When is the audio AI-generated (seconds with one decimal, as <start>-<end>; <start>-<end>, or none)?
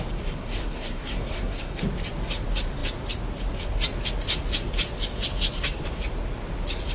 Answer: 0.4-1.8